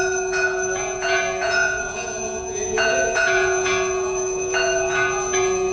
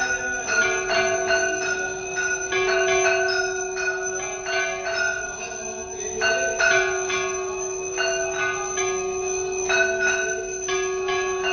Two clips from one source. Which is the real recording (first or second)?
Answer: second